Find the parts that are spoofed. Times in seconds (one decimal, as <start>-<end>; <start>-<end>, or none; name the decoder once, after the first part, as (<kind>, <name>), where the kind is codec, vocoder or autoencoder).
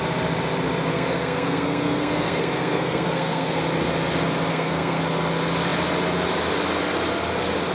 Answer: 0.9-3.6 (codec, SNAC); 4.5-5.0